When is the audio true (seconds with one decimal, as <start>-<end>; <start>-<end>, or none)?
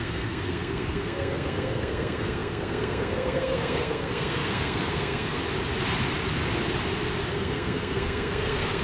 5.4-7.3